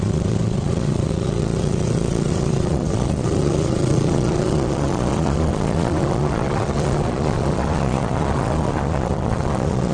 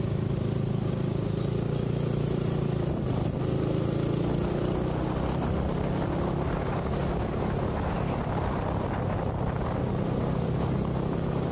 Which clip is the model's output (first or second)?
first